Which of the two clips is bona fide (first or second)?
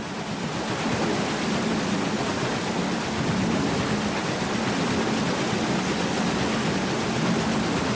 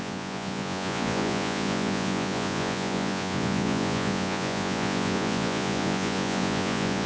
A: first